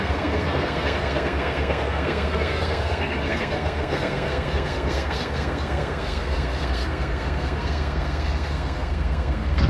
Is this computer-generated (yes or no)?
yes